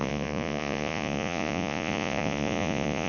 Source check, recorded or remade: remade